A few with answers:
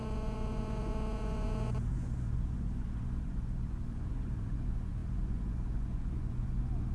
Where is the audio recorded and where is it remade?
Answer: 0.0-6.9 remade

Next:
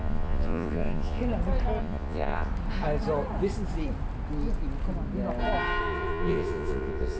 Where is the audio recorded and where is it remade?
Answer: 0.0-1.2 remade; 1.2-1.8 recorded; 1.8-2.5 remade; 2.5-5.8 recorded; 5.8-7.2 remade

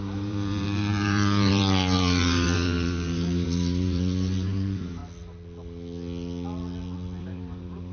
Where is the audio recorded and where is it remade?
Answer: 0.0-5.0 remade; 5.0-7.2 recorded; 7.2-7.9 remade

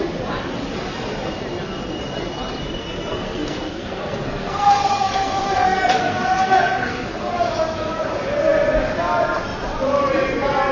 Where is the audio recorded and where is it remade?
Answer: 0.0-2.8 recorded; 2.8-7.3 remade; 7.3-10.7 recorded

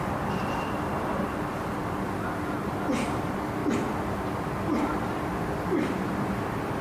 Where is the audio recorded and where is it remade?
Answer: 0.0-1.8 remade; 1.8-3.2 recorded; 3.2-6.8 remade